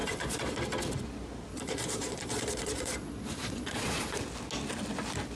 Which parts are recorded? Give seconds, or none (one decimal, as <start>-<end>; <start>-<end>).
0.6-1.5; 4.2-5.4